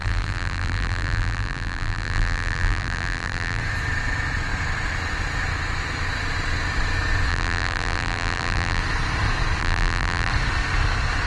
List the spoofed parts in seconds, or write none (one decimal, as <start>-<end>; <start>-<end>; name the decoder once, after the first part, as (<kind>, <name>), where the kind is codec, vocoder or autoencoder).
0.0-3.6 (vocoder, BigVGAN v2); 7.3-8.8; 9.6-10.3